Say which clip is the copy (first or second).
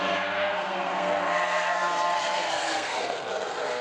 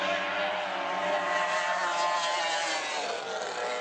first